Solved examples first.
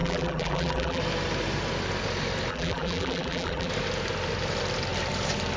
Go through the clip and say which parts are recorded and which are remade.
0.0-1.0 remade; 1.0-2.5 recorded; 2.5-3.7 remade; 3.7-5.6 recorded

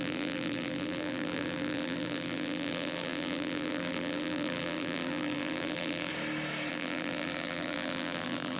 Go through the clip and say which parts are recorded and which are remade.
0.0-6.1 remade; 6.1-6.7 recorded; 6.7-8.6 remade